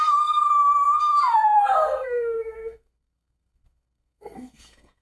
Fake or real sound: fake